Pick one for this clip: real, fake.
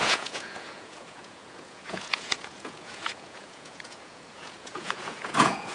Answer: fake